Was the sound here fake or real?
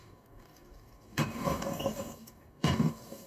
fake